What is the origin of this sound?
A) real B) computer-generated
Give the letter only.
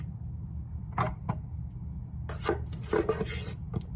A